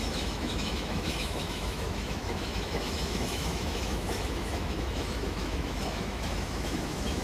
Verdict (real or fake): fake